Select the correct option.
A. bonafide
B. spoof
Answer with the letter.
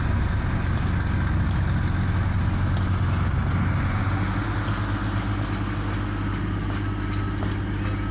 A